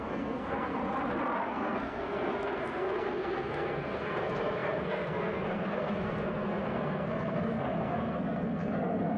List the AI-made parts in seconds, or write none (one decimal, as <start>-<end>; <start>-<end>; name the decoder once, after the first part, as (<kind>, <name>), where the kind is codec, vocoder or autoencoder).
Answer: 0.0-0.8 (codec, SNAC); 1.4-9.2